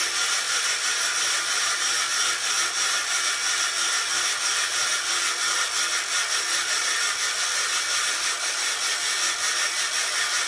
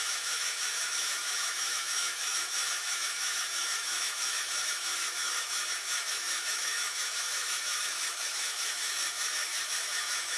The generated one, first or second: second